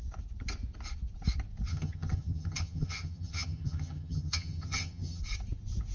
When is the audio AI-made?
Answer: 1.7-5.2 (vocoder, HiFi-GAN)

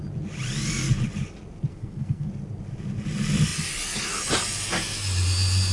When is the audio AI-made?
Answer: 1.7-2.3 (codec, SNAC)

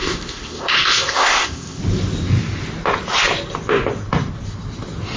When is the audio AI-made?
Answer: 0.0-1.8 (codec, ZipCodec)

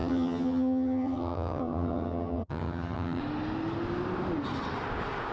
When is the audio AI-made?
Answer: 0.0-3.2 (vocoder, HiFi-GAN)

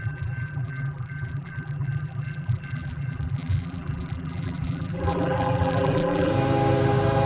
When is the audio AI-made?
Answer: 0.0-6.3 (vocoder, BigVGAN v2)

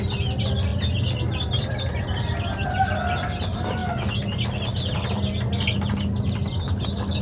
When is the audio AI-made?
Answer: none

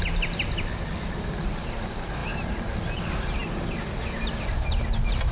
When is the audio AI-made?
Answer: none

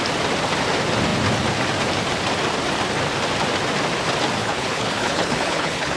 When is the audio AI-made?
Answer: 4.4-6.0 (codec, HILCodec)